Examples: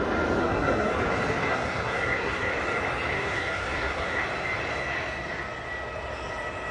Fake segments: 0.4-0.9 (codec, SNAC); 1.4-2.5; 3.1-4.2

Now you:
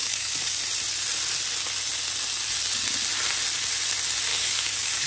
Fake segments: 0.0-0.6 (codec, DAC); 4.3-5.1

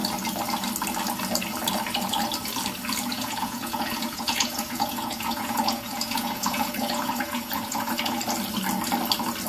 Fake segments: 3.1-8.2 (vocoder, Vocos)

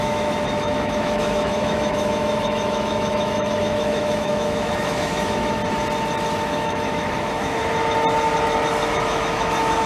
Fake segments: 0.0-5.6 (autoencoder, DAC-VAE); 6.5-7.6; 8.9-9.9

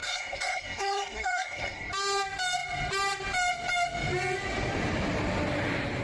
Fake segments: 0.0-1.9 (codec, SNAC)

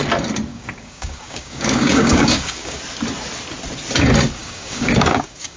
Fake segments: 0.5-2.8 (codec, DAC); 4.4-5.6

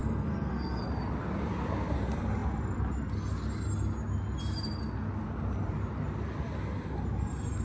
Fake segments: 0.0-0.8 (codec, SNAC)